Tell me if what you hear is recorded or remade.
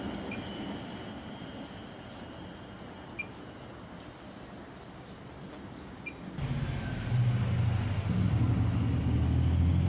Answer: recorded